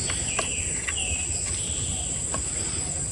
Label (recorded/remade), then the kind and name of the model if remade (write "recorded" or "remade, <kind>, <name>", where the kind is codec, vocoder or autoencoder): recorded